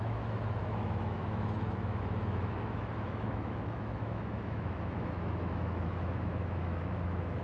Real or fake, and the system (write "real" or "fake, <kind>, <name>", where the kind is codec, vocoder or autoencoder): fake, autoencoder, DAC-VAE